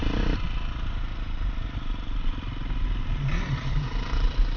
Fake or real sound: real